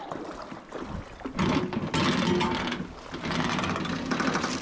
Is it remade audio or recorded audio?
recorded